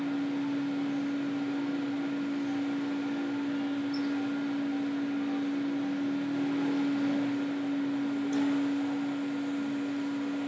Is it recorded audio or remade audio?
recorded